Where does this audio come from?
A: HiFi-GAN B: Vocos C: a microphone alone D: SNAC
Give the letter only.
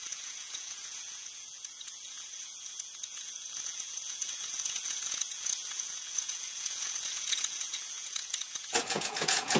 B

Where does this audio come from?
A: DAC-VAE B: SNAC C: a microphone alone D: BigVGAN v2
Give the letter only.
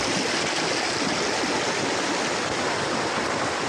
C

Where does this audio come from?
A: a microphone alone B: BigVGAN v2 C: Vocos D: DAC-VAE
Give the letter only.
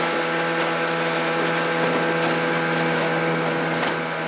A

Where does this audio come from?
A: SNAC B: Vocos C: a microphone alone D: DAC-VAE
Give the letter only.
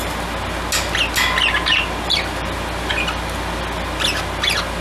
C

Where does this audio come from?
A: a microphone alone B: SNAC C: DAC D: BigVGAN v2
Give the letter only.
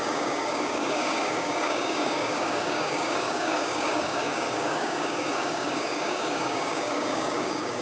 C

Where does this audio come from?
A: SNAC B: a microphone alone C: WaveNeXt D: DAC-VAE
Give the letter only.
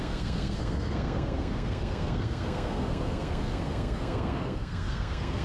A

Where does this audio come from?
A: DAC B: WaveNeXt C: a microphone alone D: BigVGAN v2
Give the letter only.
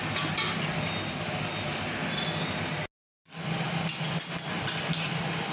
C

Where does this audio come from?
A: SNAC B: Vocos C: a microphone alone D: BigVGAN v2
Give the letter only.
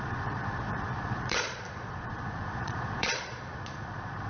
B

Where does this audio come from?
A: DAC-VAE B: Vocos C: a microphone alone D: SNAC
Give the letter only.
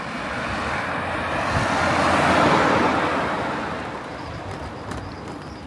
C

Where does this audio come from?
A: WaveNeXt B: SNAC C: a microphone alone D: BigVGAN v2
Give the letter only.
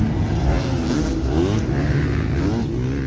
C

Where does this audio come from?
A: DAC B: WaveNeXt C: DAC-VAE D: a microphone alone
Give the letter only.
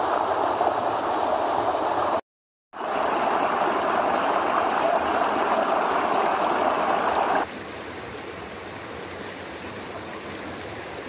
D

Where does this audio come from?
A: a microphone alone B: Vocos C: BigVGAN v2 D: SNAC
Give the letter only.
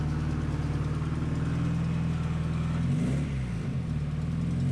A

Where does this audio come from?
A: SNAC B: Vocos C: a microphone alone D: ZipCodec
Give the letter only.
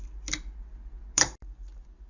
C